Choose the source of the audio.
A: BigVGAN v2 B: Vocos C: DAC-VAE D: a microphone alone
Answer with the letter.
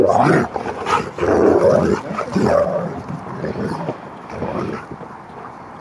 D